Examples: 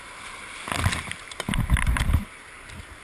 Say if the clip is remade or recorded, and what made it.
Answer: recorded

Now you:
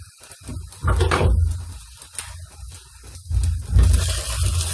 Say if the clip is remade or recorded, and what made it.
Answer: recorded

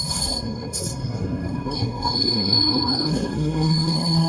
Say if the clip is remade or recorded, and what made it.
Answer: remade, codec, SNAC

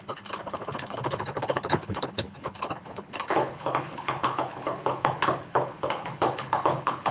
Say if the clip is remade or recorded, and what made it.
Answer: remade, codec, HILCodec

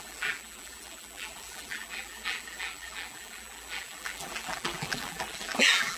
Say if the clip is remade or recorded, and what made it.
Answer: remade, vocoder, BigVGAN v2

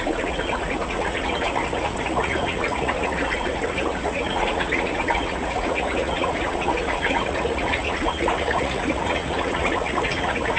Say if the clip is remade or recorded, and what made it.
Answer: remade, vocoder, Vocos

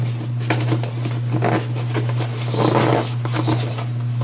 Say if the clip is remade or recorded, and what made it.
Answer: recorded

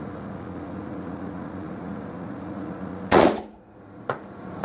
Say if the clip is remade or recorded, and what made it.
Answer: remade, vocoder, Vocos